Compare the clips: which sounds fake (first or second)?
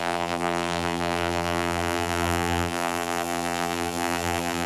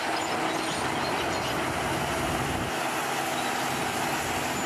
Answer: first